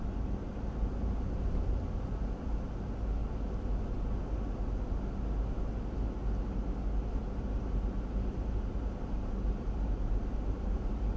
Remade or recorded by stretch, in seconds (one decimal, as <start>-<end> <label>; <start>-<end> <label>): 0.0-3.2 remade; 3.2-7.1 recorded; 7.1-11.2 remade